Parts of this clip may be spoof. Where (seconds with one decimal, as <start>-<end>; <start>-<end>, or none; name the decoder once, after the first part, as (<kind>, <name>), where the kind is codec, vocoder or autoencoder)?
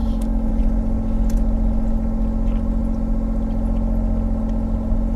0.0-0.5 (codec, DAC)